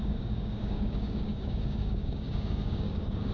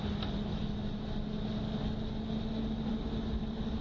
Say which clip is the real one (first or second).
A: second